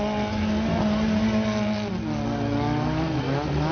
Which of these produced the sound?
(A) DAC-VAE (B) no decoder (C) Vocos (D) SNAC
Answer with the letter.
B